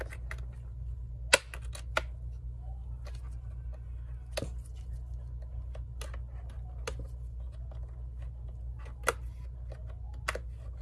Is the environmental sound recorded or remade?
recorded